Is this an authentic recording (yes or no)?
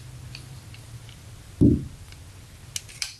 yes